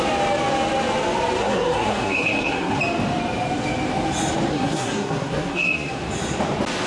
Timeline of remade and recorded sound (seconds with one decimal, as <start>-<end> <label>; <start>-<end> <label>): 0.0-1.4 recorded; 1.4-2.8 remade; 2.8-4.5 recorded; 4.5-6.0 remade; 6.0-6.9 recorded